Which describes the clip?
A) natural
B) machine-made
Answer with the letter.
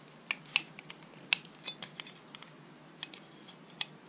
A